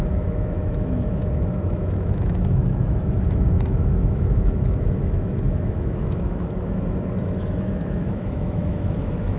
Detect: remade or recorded remade